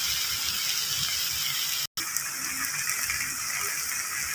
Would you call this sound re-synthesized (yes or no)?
no